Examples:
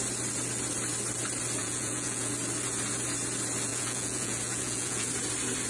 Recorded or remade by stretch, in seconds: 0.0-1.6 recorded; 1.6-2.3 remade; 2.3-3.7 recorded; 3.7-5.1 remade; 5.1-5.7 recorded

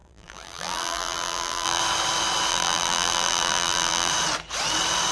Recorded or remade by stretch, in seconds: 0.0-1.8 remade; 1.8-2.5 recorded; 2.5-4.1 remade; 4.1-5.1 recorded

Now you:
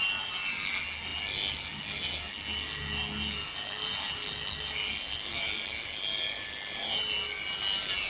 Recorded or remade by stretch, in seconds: 0.0-8.1 recorded

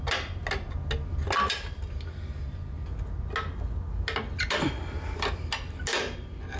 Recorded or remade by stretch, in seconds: 0.0-0.4 remade; 0.4-4.4 recorded; 4.4-6.6 remade

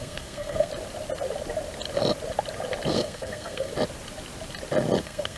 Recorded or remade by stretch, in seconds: 0.0-0.7 remade; 0.7-2.9 recorded; 2.9-3.7 remade; 3.7-5.0 recorded; 5.0-5.4 remade

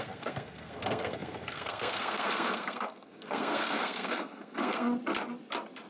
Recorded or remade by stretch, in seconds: 0.0-4.9 remade; 4.9-5.9 recorded

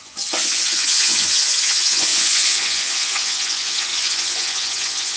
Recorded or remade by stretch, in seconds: 0.0-5.2 remade

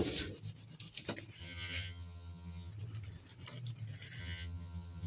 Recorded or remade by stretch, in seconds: 0.0-1.4 recorded; 1.4-2.7 remade; 2.7-4.2 recorded; 4.2-5.1 remade